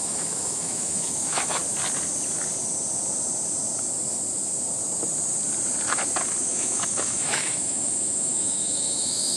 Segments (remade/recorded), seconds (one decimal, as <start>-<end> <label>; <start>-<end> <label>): 0.0-1.6 remade; 1.6-6.5 recorded; 6.5-9.4 remade